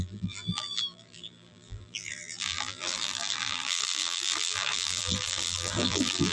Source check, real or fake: fake